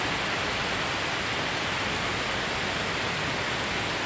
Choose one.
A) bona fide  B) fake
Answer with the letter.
A